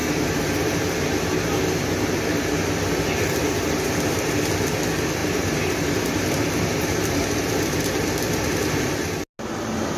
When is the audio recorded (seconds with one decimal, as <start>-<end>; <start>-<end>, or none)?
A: 4.5-5.2; 8.9-10.0